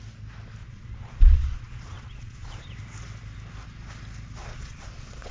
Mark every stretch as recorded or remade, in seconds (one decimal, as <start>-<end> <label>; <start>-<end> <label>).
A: 0.0-0.6 recorded; 0.6-2.7 remade; 2.7-4.4 recorded; 4.4-5.3 remade